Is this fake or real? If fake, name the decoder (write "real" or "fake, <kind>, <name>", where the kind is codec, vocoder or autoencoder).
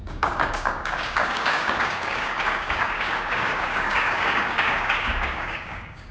fake, codec, DAC